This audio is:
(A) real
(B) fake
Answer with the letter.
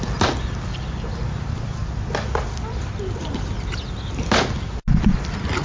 A